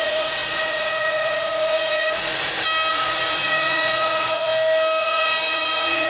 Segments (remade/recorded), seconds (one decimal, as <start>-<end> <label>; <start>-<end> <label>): 0.0-2.3 remade; 2.3-2.9 recorded; 2.9-4.5 remade; 4.5-5.0 recorded; 5.0-6.1 remade